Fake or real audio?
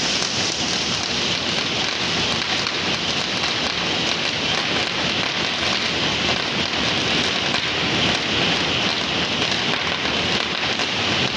real